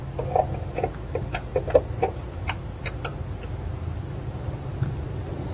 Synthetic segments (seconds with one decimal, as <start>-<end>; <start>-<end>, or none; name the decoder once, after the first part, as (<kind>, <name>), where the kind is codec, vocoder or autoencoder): none